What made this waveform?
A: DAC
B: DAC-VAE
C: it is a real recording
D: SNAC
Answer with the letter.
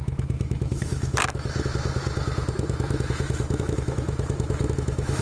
B